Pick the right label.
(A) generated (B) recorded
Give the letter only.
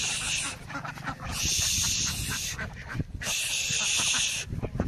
B